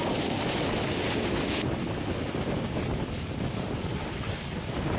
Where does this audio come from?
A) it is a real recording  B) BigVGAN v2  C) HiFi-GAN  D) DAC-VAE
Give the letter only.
A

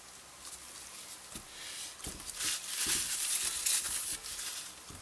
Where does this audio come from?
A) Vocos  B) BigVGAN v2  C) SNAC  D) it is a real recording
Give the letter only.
D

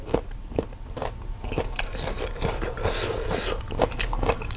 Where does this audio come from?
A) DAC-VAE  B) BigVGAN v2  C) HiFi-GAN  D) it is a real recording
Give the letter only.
D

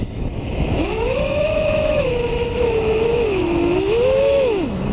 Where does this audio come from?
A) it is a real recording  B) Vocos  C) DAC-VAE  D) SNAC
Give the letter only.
C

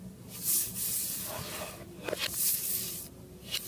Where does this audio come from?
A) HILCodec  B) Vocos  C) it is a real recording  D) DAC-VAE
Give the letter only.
C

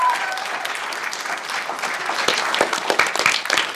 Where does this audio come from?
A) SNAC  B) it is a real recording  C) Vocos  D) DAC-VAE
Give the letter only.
B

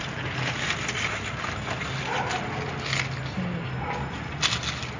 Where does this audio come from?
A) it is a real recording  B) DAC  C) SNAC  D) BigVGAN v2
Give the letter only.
A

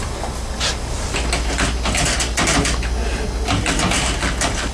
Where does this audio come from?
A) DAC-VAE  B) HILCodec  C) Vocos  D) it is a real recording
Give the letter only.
D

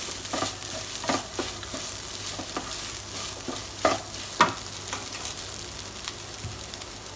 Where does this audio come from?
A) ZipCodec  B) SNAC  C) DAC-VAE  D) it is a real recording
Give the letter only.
D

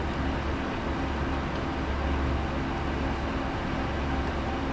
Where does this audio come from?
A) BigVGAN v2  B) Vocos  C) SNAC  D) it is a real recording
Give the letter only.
D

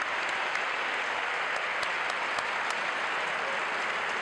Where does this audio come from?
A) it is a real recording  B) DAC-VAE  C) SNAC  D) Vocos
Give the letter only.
A